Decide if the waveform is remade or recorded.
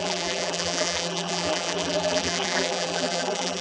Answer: remade